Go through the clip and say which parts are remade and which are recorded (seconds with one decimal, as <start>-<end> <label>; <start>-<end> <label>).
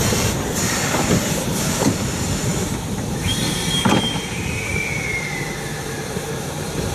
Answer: 0.0-4.7 remade; 4.7-5.8 recorded; 5.8-6.9 remade